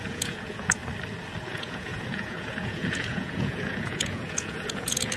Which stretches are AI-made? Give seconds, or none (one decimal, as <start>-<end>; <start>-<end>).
0.0-0.8; 1.4-5.2